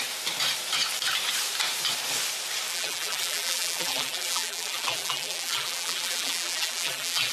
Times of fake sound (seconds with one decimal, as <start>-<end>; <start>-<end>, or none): 2.7-7.3